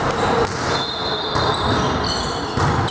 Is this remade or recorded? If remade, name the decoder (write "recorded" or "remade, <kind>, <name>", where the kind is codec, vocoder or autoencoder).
recorded